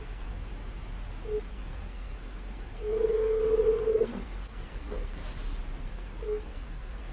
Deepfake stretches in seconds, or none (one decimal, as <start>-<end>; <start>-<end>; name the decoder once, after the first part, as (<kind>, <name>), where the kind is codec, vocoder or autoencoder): 0.0-0.5 (codec, SNAC); 1.5-3.4; 3.9-5.2; 5.8-7.1